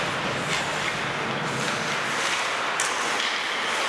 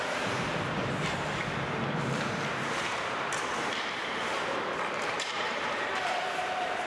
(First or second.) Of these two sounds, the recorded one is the first